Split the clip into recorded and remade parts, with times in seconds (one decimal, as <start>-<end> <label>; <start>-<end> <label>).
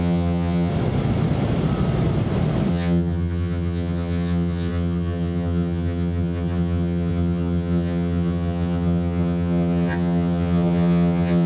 0.0-0.7 remade; 0.7-2.7 recorded; 2.7-11.5 remade